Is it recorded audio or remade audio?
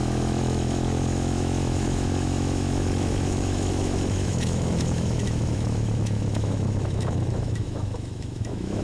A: remade